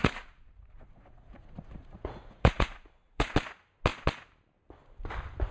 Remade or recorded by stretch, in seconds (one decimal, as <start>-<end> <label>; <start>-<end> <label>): 0.0-3.3 remade; 3.3-5.5 recorded